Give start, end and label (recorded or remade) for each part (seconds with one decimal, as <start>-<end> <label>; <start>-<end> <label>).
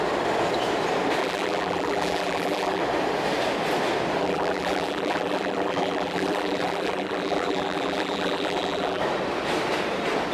0.0-1.2 recorded; 1.2-2.8 remade; 2.8-4.2 recorded; 4.2-9.0 remade; 9.0-10.3 recorded